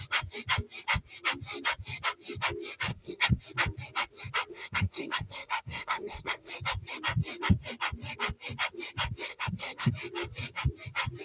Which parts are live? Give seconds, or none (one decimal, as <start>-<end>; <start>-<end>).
0.0-2.9; 3.4-4.5; 6.5-9.3; 9.9-11.2